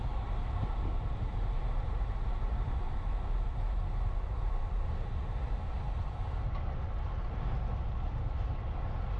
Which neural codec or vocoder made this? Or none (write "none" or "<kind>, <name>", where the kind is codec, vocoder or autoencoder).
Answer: none